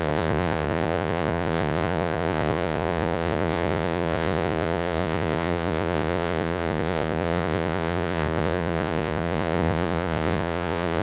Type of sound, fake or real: fake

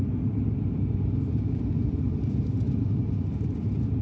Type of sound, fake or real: fake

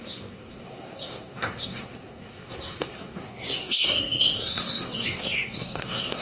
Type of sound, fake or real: fake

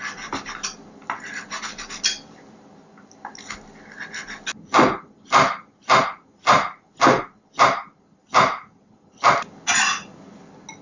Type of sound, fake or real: real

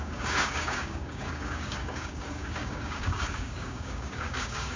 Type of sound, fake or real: fake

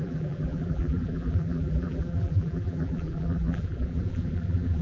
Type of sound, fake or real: fake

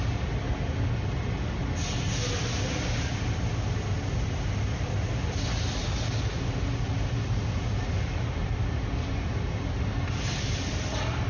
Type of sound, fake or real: real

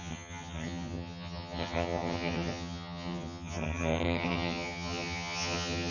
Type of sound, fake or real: fake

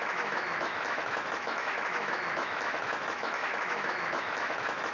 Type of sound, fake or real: fake